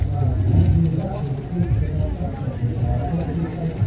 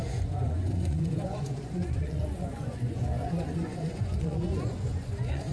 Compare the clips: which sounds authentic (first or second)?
first